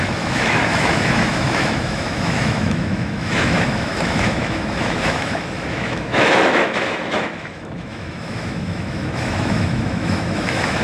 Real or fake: fake